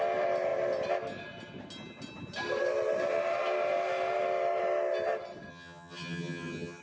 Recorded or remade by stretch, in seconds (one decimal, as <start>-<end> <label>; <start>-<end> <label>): 0.0-5.5 recorded; 5.5-6.8 remade